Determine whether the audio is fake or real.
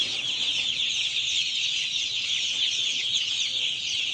fake